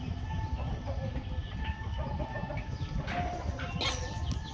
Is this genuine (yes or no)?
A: yes